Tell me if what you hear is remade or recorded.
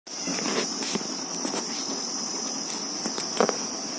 recorded